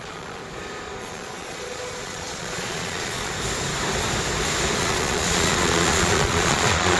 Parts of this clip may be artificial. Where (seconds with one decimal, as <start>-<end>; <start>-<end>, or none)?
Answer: 0.0-0.4; 1.0-3.3; 4.8-7.0